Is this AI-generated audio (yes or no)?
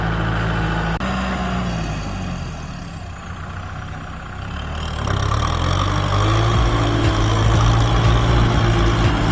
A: no